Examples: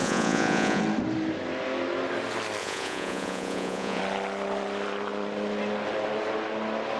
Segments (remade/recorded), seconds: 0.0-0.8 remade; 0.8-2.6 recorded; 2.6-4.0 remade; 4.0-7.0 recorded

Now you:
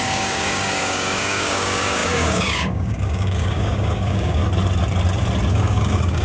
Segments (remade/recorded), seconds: 0.0-4.4 remade; 4.4-5.5 recorded; 5.5-6.2 remade

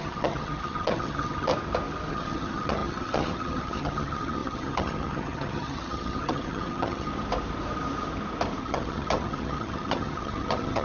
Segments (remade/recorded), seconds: 0.0-1.5 remade; 1.5-2.1 recorded; 2.1-7.1 remade; 7.1-8.6 recorded; 8.6-10.8 remade

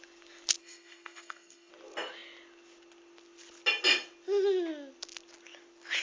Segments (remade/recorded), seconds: 0.0-0.6 recorded; 0.6-1.7 remade; 1.7-6.0 recorded